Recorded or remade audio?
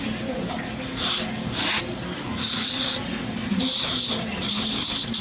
recorded